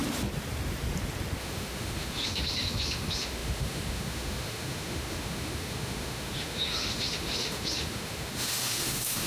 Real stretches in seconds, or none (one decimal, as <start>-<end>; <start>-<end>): 0.0-1.4